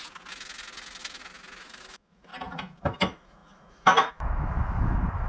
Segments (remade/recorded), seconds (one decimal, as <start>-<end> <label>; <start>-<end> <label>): 0.0-1.6 recorded; 1.6-2.3 remade; 2.3-2.8 recorded; 2.8-5.3 remade